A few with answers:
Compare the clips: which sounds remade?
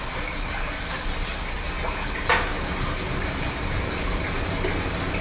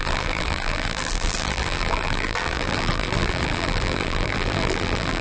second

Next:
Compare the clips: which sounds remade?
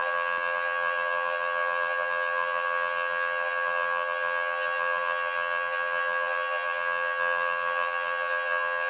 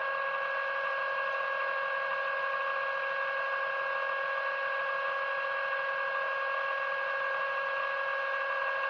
first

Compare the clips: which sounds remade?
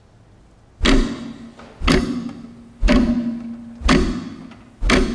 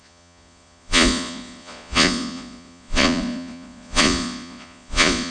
second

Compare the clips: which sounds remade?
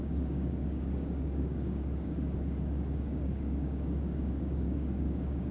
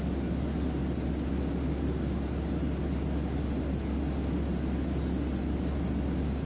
first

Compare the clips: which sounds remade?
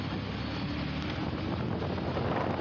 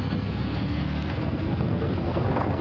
second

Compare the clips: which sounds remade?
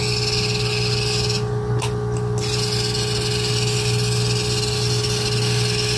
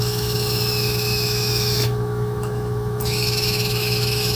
second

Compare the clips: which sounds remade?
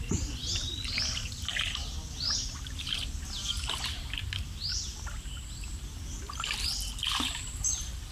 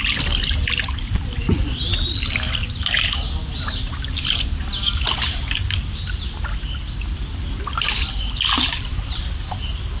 first